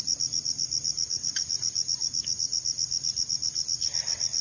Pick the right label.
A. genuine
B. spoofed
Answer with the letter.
A